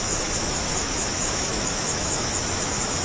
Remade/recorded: remade